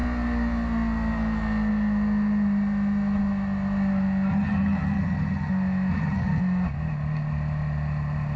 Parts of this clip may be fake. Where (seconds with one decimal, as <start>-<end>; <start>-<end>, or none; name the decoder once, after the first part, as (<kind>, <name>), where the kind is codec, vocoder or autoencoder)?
4.3-5.5 (vocoder, HiFi-GAN); 5.9-6.4